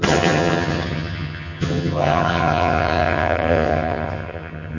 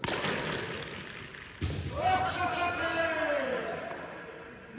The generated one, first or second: first